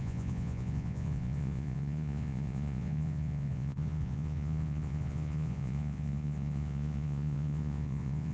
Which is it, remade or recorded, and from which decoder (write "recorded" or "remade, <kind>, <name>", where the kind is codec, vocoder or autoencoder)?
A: remade, vocoder, Vocos